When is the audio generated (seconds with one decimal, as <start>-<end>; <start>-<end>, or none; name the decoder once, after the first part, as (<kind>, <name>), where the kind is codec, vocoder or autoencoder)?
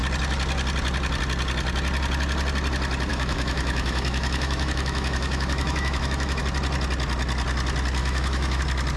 3.1-6.4 (autoencoder, DAC-VAE); 8.0-8.6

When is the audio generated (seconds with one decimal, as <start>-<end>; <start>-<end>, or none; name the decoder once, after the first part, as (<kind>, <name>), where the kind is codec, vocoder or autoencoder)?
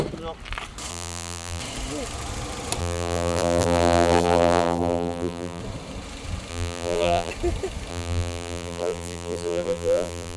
0.9-1.6 (vocoder, BigVGAN v2); 2.8-5.6; 6.5-7.3; 7.9-10.4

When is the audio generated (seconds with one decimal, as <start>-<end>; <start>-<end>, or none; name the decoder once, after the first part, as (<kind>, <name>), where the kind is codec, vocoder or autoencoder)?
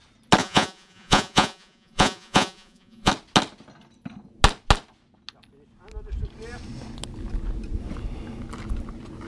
0.4-3.1 (vocoder, Vocos)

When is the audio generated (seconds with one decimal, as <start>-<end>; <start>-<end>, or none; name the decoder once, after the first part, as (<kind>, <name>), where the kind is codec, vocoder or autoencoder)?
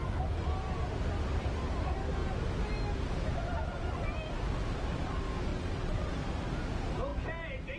5.5-6.1 (vocoder, WaveNeXt)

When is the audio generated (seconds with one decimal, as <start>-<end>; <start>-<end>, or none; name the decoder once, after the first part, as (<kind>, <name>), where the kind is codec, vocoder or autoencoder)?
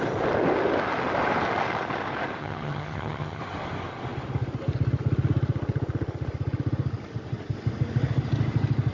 2.4-3.4 (vocoder, HiFi-GAN)